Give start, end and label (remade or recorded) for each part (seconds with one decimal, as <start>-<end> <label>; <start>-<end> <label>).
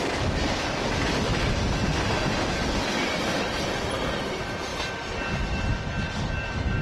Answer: 0.0-1.3 remade; 1.3-4.2 recorded; 4.2-4.7 remade; 4.7-5.5 recorded; 5.5-6.8 remade